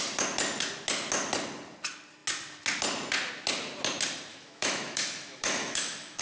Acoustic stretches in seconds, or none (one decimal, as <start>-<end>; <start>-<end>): 0.0-4.3